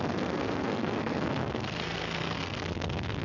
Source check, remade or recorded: remade